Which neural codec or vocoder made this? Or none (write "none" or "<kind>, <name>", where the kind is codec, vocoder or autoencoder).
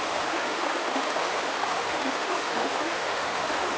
autoencoder, DAC-VAE